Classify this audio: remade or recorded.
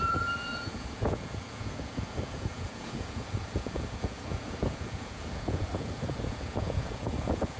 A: remade